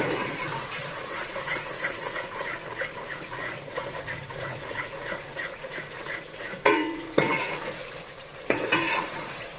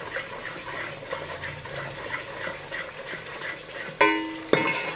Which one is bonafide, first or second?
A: second